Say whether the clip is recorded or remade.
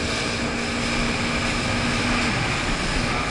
recorded